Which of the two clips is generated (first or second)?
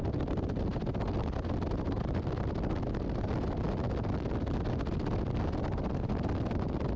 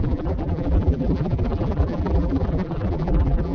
second